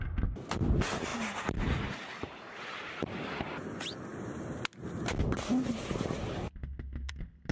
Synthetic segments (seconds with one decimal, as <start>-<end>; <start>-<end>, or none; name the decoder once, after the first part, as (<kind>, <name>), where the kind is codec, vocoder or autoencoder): none